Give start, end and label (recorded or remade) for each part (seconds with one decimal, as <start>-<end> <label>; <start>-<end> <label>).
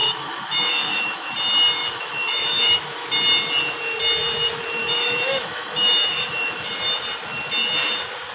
0.0-1.3 remade; 1.3-1.8 recorded; 1.8-2.8 remade; 2.8-4.8 recorded; 4.8-6.7 remade; 6.7-8.3 recorded